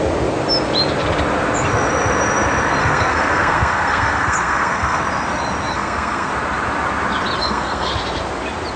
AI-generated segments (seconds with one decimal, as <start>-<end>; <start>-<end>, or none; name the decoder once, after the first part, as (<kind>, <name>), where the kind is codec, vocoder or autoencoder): 2.8-5.0 (codec, SNAC); 5.7-6.3; 7.4-7.9